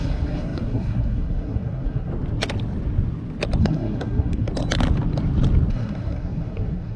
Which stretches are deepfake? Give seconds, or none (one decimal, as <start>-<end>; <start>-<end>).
0.0-2.1; 3.6-4.5; 5.7-7.0